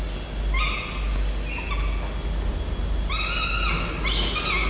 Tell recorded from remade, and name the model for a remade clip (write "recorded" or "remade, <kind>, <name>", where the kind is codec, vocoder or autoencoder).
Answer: recorded